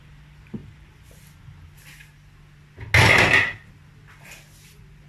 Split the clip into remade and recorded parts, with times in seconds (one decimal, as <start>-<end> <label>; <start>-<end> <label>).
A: 0.0-5.1 recorded